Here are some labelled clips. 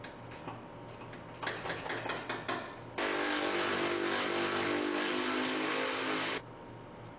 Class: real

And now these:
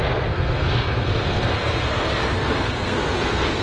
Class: fake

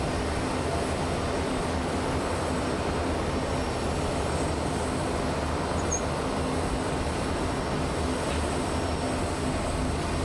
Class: real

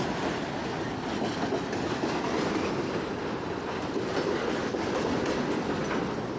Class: real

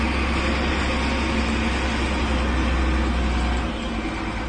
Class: real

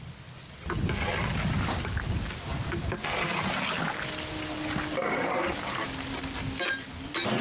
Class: real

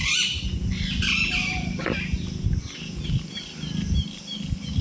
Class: real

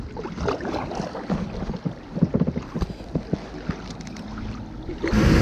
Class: real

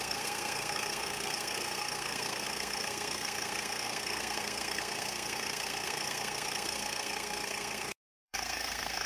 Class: fake